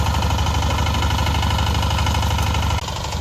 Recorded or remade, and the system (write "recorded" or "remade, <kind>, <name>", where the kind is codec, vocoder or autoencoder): recorded